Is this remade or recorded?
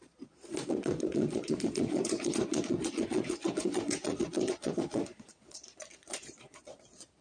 remade